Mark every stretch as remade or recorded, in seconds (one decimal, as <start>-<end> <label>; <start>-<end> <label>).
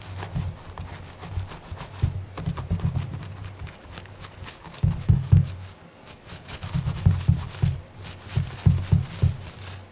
0.0-3.4 recorded; 3.4-7.1 remade; 7.1-9.9 recorded